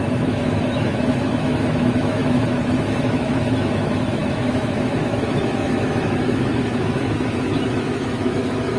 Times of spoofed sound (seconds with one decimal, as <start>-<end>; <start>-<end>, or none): 0.0-8.8